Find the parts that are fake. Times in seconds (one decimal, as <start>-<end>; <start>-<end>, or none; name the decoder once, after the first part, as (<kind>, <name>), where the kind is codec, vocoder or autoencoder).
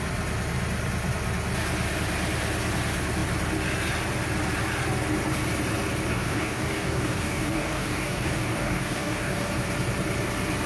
6.1-9.5 (codec, DAC)